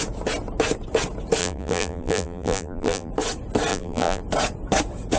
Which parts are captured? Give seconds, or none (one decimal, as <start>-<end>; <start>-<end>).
0.0-1.4; 3.1-3.7; 4.2-5.2